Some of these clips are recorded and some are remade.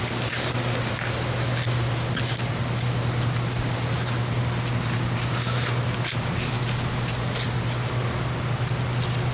recorded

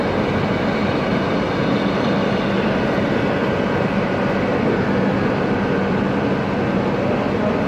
recorded